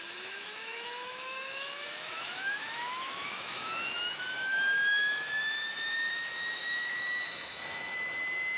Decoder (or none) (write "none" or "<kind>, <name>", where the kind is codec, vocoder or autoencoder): autoencoder, DAC-VAE